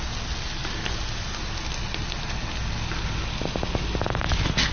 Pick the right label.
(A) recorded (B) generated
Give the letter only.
A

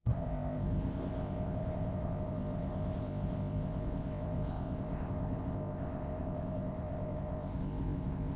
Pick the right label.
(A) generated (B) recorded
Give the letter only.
A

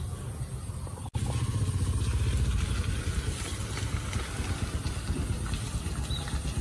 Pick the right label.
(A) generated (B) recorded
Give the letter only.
B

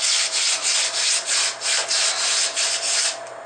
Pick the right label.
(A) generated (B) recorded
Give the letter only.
B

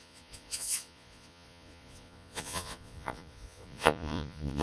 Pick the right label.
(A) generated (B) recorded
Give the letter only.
A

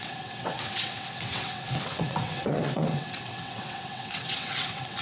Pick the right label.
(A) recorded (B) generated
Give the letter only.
B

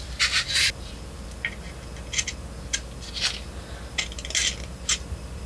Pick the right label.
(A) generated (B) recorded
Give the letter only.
B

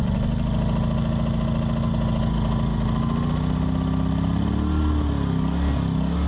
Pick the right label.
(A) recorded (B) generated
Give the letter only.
A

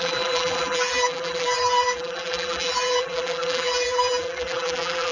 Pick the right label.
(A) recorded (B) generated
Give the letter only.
B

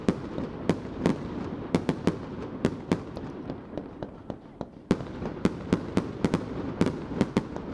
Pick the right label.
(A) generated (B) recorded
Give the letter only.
A